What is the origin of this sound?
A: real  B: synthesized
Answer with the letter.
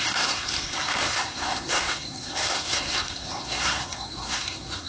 B